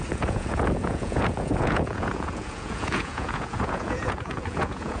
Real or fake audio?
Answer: fake